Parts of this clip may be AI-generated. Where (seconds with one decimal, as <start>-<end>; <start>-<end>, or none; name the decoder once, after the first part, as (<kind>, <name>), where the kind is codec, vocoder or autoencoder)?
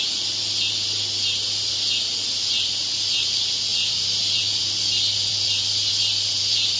3.7-4.3 (vocoder, BigVGAN v2)